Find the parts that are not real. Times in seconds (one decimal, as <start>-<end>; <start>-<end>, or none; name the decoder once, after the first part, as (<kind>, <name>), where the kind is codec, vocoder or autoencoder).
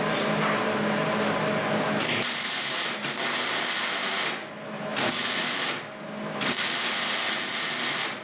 none